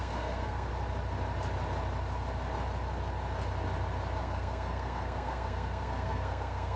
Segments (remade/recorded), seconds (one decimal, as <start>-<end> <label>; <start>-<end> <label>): 0.0-0.7 remade; 0.7-4.2 recorded; 4.2-6.8 remade